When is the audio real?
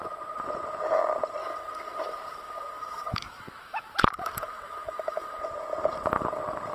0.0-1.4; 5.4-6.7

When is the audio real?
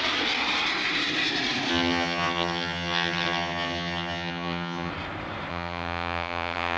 0.0-1.7; 4.9-5.5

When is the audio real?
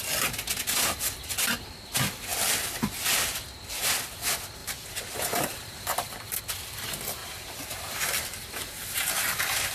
0.0-4.6; 6.4-7.2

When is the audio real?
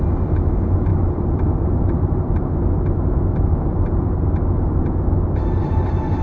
0.0-0.9; 2.3-6.2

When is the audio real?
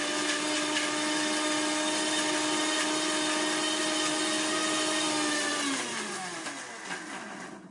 0.0-7.7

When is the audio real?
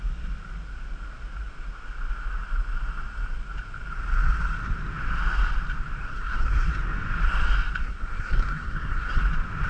0.0-6.0; 6.7-7.8; 9.2-9.7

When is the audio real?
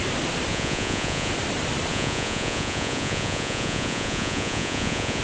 0.0-0.5; 1.3-1.9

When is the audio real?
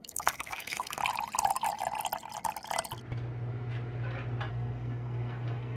1.0-4.5